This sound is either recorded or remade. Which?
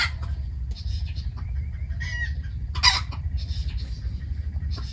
recorded